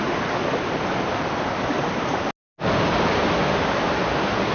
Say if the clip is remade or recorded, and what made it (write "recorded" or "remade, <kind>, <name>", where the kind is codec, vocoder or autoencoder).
recorded